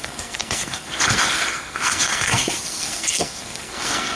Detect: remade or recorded remade